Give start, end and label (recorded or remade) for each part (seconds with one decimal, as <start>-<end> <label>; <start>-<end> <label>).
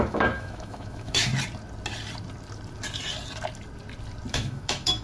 0.0-1.3 remade; 1.3-4.3 recorded; 4.3-5.0 remade